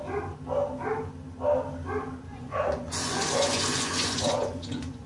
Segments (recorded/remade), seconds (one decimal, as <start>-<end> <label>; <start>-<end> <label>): 0.0-2.3 recorded; 2.3-5.1 remade